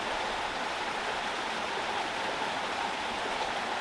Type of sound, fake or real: real